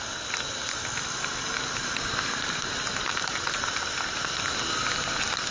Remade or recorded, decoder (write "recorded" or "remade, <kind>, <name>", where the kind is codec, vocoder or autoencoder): recorded